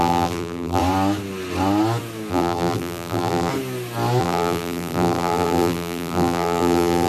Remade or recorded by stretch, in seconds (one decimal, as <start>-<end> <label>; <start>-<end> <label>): 0.0-0.8 remade; 0.8-2.3 recorded; 2.3-3.5 remade; 3.5-4.2 recorded; 4.2-7.1 remade